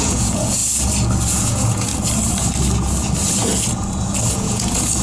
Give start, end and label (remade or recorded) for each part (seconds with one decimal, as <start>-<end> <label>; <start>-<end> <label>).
0.0-0.6 remade; 0.6-1.3 recorded; 1.3-1.9 remade; 1.9-4.3 recorded; 4.3-5.0 remade